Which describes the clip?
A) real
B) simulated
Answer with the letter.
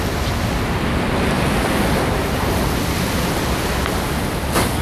A